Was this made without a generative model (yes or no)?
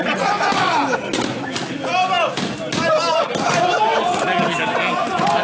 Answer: yes